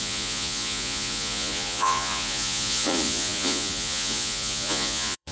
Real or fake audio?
fake